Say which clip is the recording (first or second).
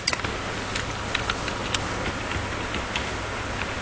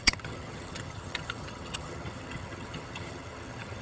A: first